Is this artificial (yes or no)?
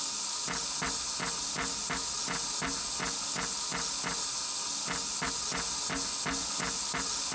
no